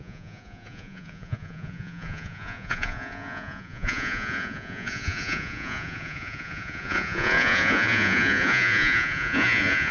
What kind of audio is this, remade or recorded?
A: remade